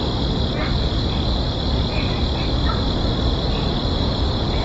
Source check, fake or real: real